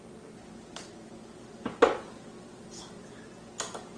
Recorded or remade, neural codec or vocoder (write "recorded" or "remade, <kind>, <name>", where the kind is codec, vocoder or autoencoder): recorded